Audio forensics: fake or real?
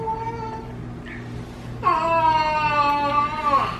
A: real